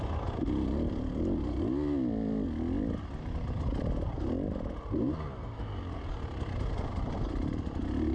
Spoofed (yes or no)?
no